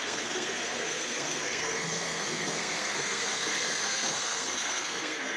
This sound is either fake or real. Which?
fake